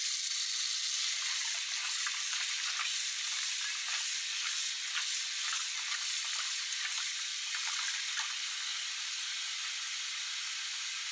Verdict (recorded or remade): recorded